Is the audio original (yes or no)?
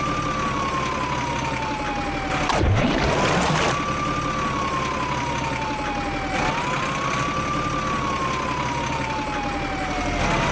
yes